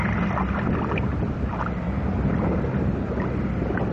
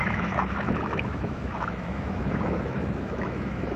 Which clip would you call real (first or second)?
first